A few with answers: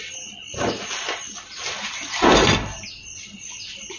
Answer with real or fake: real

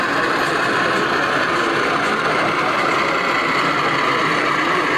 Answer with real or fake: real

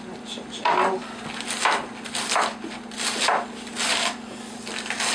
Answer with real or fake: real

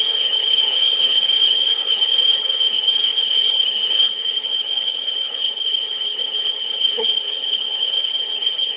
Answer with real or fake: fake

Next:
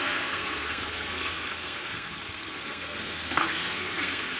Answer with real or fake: fake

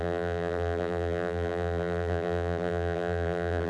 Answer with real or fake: fake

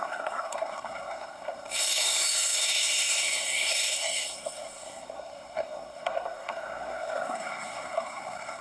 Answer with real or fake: fake